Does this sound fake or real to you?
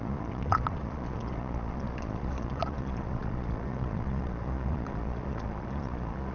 fake